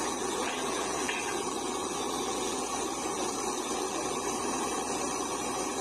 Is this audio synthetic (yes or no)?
yes